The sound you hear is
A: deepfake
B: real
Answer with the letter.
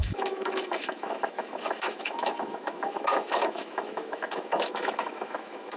A